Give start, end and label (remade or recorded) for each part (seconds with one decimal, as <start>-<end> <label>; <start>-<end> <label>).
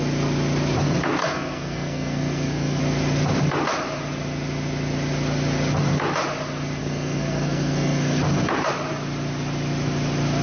0.0-1.2 recorded; 1.2-2.8 remade; 2.8-6.8 recorded; 6.8-8.2 remade; 8.2-10.4 recorded